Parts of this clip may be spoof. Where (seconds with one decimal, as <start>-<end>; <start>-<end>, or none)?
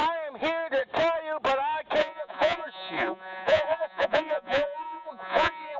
2.0-5.8